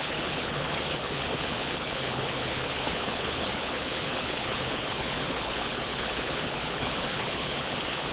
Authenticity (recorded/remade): remade